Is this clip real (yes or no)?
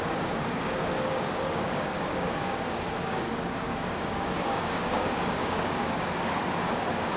no